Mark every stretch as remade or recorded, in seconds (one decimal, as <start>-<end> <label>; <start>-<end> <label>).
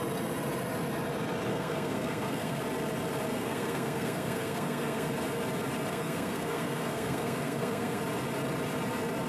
0.0-1.5 recorded; 1.5-2.6 remade; 2.6-3.3 recorded; 3.3-5.1 remade; 5.1-5.9 recorded; 5.9-8.0 remade; 8.0-9.3 recorded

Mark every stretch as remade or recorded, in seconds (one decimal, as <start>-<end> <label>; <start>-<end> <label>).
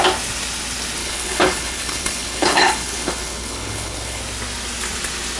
0.0-1.0 recorded; 1.0-4.2 remade; 4.2-5.4 recorded